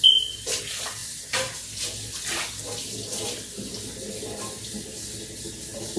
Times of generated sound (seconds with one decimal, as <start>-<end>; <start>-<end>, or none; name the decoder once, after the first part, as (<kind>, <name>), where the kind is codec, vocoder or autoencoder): none